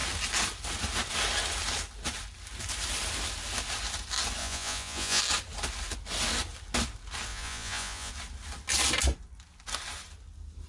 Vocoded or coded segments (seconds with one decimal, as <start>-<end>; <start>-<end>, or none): 4.4-5.2; 7.3-8.1